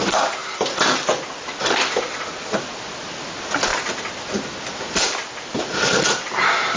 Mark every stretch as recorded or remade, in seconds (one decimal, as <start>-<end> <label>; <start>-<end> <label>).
0.0-6.8 recorded